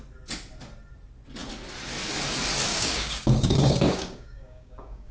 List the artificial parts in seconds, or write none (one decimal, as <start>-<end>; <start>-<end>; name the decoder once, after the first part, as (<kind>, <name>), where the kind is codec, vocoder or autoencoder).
2.7-5.1 (codec, DAC)